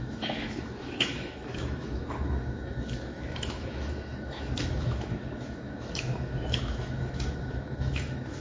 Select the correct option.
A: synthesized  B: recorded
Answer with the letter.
A